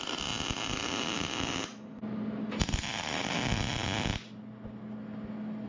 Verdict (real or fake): real